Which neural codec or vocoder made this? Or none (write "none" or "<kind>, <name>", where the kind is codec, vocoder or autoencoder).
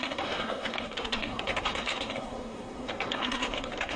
codec, SNAC